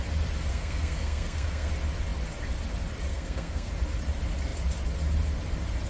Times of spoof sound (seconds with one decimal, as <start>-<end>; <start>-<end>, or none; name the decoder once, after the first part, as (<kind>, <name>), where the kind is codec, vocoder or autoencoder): 0.5-1.7 (codec, SNAC); 3.1-3.7